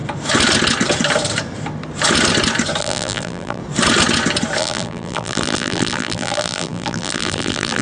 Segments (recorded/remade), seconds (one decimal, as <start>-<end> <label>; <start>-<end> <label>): 0.0-2.8 recorded; 2.8-3.6 remade; 3.6-4.6 recorded; 4.6-7.8 remade